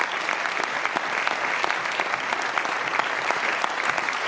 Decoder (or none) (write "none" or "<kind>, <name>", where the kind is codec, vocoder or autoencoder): none